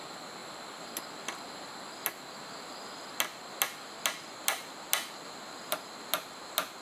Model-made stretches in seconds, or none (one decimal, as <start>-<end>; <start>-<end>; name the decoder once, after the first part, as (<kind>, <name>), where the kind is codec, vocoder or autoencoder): none